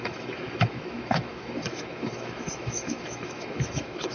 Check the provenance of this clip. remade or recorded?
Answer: remade